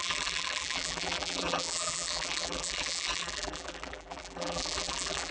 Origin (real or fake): fake